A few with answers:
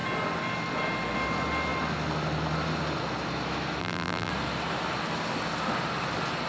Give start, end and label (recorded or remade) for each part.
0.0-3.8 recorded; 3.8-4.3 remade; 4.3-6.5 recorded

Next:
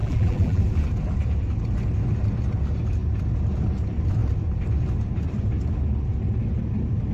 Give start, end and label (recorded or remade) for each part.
0.0-0.6 remade; 0.6-7.1 recorded

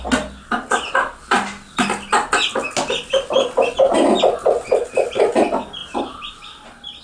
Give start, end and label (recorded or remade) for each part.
0.0-5.8 recorded; 5.8-6.4 remade; 6.4-7.0 recorded

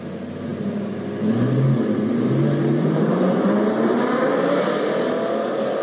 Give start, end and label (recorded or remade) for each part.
0.0-2.6 recorded; 2.6-4.2 remade; 4.2-5.8 recorded

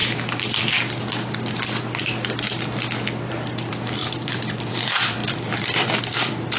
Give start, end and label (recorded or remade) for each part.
0.0-3.3 recorded; 3.3-6.6 remade

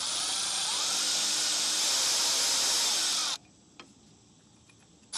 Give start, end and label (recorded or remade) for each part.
0.0-5.2 recorded

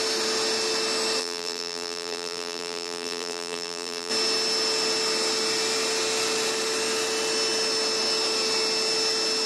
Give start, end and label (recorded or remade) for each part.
0.0-1.2 recorded; 1.2-4.1 remade; 4.1-9.5 recorded

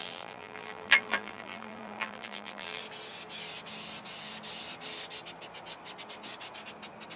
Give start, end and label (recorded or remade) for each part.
0.0-2.8 remade; 2.8-7.2 recorded